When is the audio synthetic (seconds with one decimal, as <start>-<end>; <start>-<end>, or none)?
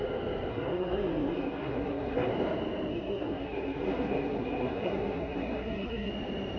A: 0.5-2.3; 2.9-6.1